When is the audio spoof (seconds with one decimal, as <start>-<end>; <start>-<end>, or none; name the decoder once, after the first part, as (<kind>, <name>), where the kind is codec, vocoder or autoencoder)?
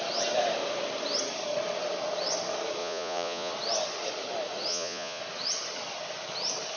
2.8-3.5 (vocoder, Vocos); 4.7-5.2